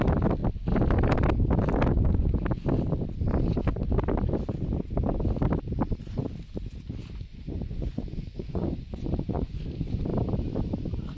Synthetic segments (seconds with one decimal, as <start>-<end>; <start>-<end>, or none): 7.3-9.6